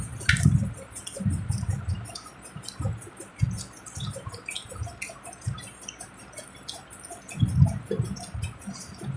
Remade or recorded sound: recorded